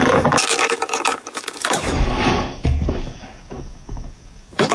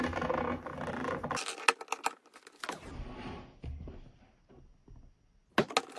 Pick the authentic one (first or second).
second